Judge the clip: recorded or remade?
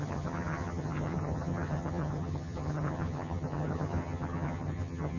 remade